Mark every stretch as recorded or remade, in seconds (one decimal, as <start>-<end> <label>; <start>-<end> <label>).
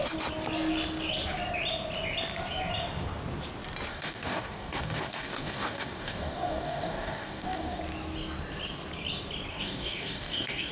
0.0-3.9 recorded; 3.9-7.8 remade; 7.8-9.5 recorded; 9.5-10.7 remade